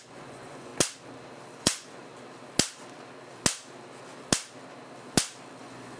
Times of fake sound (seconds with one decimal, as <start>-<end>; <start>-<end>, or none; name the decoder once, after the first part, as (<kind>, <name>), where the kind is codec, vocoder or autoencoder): 0.0-0.7 (vocoder, Vocos); 1.6-2.0; 5.6-6.0